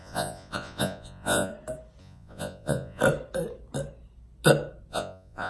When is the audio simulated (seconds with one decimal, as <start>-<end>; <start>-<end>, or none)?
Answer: 0.0-1.5; 2.0-3.0; 4.9-5.5

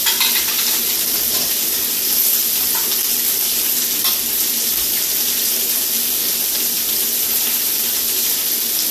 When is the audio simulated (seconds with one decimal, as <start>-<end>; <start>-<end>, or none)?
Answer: none

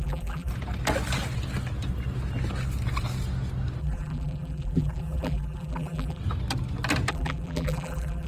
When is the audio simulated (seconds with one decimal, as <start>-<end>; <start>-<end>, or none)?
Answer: 0.0-0.5; 3.8-6.2; 7.1-8.3